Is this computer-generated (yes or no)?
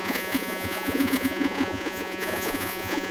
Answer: yes